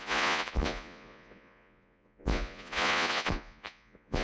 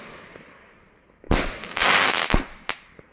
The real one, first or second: second